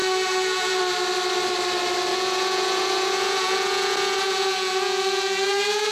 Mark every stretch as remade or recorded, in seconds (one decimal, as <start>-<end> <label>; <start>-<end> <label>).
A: 0.0-0.8 remade; 0.8-2.1 recorded; 2.1-5.9 remade